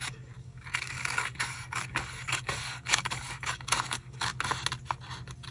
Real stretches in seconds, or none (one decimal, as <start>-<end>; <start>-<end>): 4.3-5.5